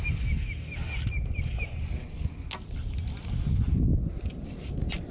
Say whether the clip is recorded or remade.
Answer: recorded